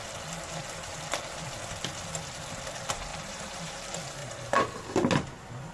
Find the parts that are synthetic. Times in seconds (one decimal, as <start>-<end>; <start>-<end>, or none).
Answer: 3.1-3.7; 4.2-4.8